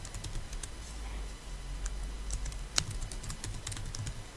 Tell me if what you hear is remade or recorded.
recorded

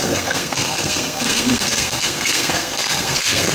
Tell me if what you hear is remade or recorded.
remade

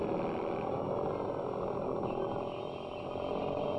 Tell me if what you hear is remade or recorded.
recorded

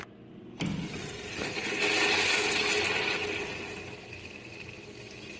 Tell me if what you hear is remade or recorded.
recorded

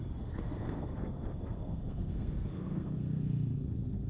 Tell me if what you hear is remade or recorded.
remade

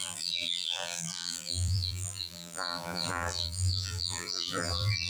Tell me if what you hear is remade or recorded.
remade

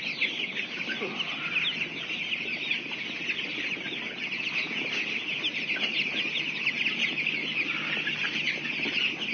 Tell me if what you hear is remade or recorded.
recorded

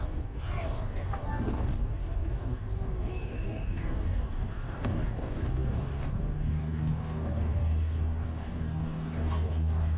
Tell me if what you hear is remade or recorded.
remade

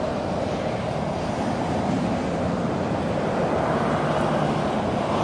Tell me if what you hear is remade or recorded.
remade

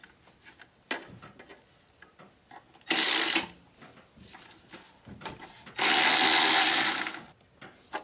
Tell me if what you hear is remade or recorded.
recorded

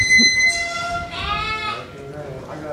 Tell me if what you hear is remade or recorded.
recorded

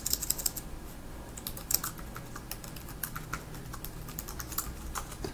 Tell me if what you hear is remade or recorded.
recorded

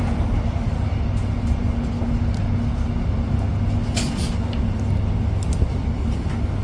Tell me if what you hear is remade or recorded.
recorded